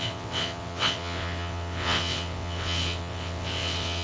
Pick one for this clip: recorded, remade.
remade